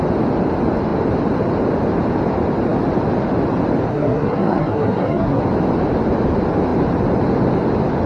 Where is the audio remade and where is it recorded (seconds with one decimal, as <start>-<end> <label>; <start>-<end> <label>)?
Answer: 0.0-3.9 recorded; 3.9-5.4 remade; 5.4-8.1 recorded